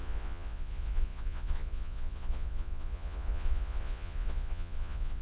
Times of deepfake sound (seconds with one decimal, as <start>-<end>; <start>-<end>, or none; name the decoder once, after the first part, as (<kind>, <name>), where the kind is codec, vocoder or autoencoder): 0.0-5.2 (vocoder, Vocos)